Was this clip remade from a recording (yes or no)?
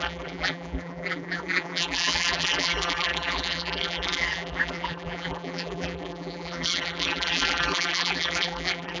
yes